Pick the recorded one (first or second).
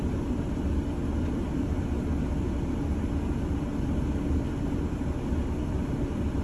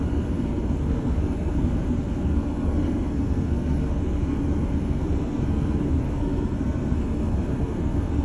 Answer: first